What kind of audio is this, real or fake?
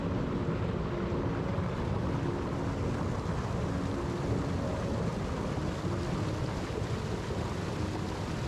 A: real